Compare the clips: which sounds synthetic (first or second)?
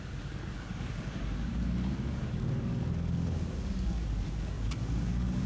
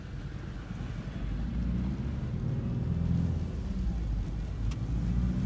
first